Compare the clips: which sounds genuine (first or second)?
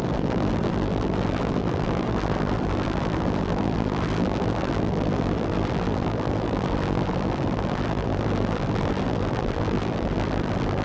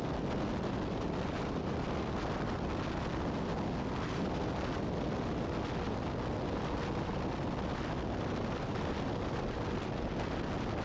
second